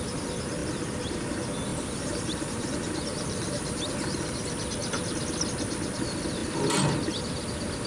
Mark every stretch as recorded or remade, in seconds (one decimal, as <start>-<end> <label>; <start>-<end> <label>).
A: 0.0-1.7 recorded; 1.7-4.3 remade; 4.3-7.9 recorded